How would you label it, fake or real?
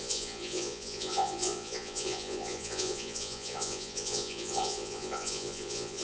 fake